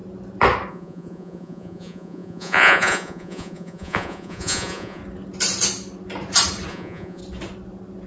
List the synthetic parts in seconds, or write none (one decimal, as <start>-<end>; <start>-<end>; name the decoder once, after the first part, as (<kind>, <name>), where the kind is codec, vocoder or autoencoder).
0.7-5.0 (vocoder, Vocos); 6.7-7.2